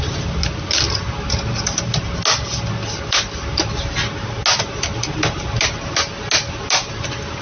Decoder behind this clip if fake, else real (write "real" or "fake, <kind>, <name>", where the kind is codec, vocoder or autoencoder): real